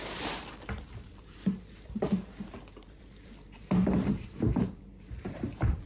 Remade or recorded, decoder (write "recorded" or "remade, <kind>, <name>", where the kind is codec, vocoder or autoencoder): remade, vocoder, BigVGAN v2